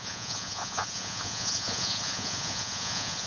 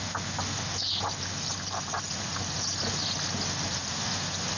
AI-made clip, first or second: first